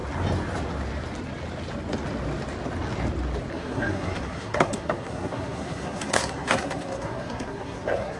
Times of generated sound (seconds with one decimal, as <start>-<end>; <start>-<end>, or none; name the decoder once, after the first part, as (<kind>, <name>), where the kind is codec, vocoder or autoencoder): 3.5-8.2 (codec, SNAC)